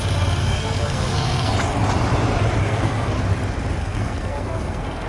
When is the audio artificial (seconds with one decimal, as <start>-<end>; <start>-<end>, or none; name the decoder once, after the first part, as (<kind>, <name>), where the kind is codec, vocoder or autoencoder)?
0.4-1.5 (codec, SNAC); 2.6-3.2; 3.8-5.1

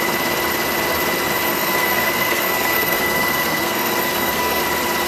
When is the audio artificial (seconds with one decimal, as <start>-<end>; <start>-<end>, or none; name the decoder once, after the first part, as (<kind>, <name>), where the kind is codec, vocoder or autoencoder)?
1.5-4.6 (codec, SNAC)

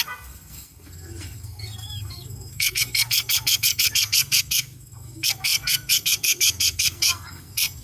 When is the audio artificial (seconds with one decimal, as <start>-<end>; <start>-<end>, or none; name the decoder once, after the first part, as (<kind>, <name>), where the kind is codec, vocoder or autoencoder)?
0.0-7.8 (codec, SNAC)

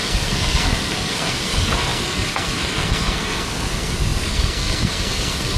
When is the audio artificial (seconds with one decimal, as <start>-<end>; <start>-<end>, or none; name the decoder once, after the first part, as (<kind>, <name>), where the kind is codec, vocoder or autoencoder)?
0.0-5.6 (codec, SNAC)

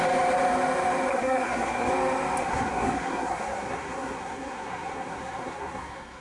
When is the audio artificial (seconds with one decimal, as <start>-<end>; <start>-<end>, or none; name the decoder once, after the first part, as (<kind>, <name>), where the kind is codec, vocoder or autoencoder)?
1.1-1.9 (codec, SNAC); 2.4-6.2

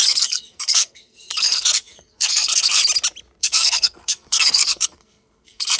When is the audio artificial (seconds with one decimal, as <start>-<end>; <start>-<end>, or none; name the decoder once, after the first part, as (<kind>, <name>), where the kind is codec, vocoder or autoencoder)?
0.0-2.8 (codec, SNAC); 3.4-5.8

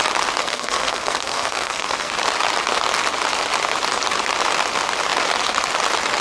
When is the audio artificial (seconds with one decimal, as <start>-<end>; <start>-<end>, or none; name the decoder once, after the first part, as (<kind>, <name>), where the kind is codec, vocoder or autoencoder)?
0.4-2.1 (codec, SNAC)